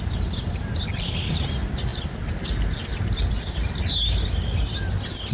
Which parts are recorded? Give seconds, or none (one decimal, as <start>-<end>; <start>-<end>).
0.0-5.3